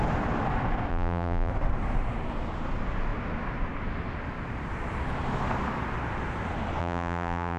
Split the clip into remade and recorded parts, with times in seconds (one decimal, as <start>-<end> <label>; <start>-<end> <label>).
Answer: 0.0-0.9 recorded; 0.9-1.5 remade; 1.5-6.8 recorded; 6.8-7.6 remade